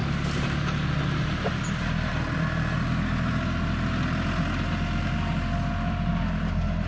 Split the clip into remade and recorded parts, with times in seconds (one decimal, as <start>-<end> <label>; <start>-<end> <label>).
0.0-6.9 recorded